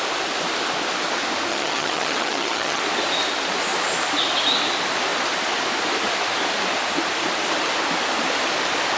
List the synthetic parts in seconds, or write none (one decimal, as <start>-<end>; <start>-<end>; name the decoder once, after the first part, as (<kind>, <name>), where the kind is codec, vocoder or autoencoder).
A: 1.5-2.8 (vocoder, HiFi-GAN)